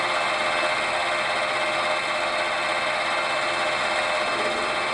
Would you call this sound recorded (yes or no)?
yes